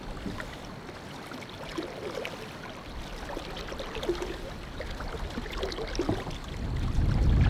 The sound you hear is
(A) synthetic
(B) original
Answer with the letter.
B